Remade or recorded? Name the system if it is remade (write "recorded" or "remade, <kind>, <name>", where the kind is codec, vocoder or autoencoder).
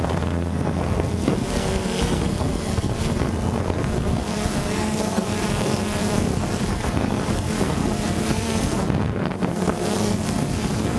remade, codec, SNAC